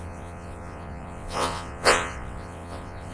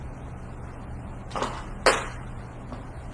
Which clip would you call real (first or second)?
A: second